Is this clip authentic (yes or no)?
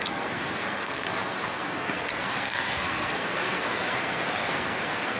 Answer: no